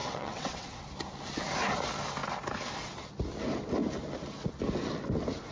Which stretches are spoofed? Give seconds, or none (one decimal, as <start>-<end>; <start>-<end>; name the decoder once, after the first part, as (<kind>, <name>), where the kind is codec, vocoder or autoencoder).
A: 0.0-0.8 (vocoder, WaveNeXt)